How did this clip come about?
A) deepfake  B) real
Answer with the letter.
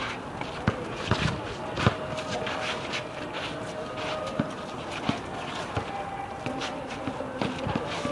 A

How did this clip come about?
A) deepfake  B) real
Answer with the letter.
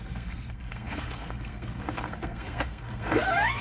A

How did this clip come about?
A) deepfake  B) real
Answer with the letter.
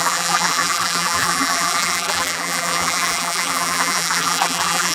A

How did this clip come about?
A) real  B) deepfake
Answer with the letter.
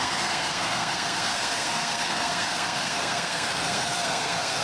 B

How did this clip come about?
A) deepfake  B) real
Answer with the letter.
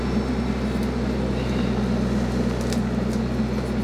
B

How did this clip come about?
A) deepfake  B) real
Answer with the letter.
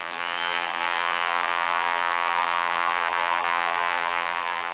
A